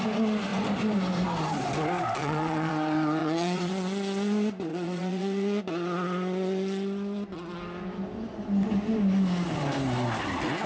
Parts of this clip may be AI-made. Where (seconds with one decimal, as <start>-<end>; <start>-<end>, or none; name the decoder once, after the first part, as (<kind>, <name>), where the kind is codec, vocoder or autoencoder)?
2.2-2.7 (vocoder, Vocos); 3.2-3.7; 4.7-5.6